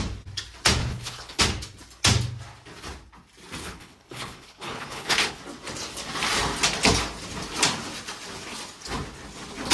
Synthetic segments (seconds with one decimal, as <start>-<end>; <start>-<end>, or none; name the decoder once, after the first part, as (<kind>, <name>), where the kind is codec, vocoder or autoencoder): 0.8-1.4 (codec, HILCodec); 3.6-5.4